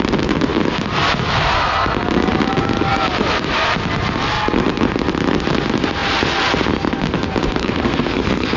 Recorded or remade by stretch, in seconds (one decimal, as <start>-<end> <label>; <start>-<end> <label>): 0.0-7.6 recorded; 7.6-8.6 remade